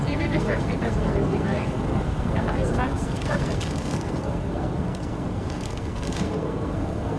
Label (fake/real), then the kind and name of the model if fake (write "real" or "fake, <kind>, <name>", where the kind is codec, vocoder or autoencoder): fake, codec, SNAC